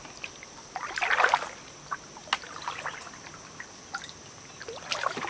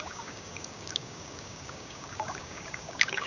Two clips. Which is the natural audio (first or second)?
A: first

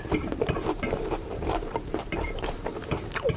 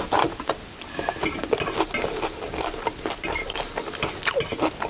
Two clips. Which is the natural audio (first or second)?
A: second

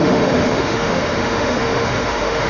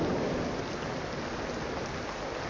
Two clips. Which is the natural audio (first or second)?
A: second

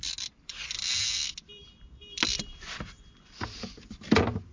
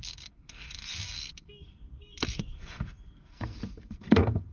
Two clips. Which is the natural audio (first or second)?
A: first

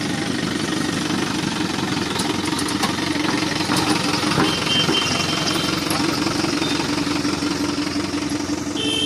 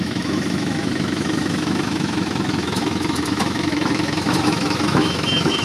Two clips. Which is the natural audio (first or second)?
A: first